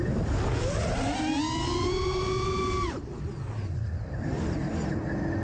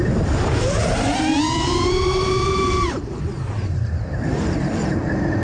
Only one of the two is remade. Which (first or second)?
second